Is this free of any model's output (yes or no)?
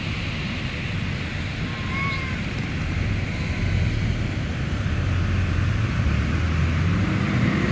yes